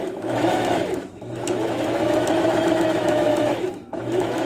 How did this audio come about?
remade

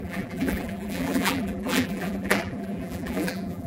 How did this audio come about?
remade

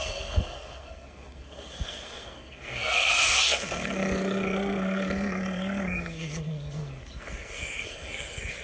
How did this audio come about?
remade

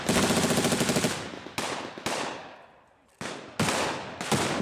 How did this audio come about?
recorded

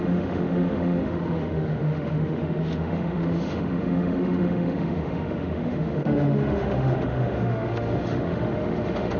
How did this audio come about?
remade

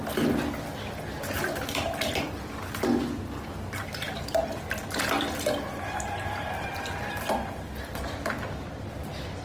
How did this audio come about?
recorded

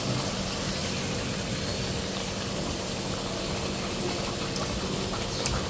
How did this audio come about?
recorded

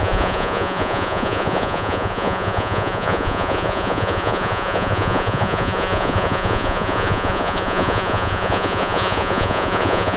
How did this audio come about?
remade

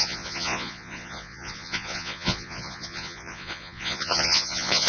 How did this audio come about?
remade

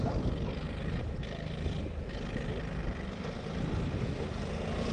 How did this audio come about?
recorded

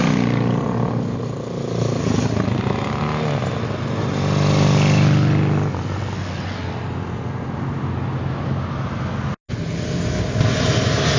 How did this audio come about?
recorded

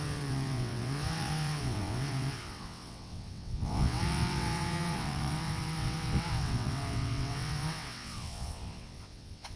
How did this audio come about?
remade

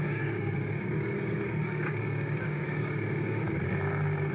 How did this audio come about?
remade